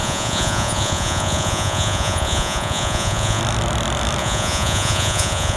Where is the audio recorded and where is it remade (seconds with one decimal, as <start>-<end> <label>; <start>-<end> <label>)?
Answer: 0.0-3.4 remade; 3.4-4.2 recorded; 4.2-5.6 remade